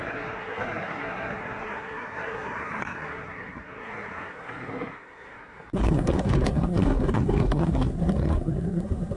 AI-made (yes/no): yes